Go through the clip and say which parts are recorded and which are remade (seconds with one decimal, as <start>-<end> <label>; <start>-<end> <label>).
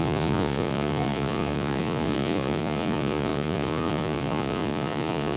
0.0-5.4 remade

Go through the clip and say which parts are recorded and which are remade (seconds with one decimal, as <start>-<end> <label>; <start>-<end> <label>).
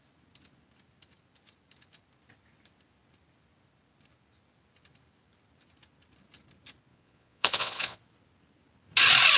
0.0-6.9 recorded; 6.9-8.0 remade; 8.0-9.4 recorded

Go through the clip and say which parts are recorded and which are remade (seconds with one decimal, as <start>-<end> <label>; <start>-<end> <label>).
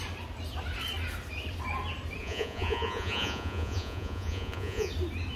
0.0-2.2 recorded; 2.2-4.9 remade; 4.9-5.4 recorded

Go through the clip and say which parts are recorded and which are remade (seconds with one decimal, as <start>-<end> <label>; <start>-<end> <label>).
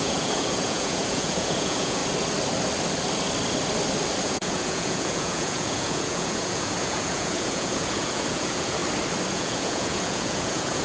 0.0-2.0 remade; 2.0-4.2 recorded; 4.2-8.8 remade; 8.8-9.3 recorded; 9.3-10.8 remade